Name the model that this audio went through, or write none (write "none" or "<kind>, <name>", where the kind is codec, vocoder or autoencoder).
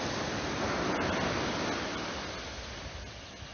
none